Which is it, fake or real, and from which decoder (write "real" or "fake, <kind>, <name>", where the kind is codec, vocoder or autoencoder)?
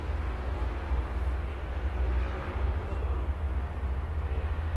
real